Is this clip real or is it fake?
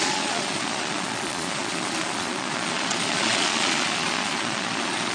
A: fake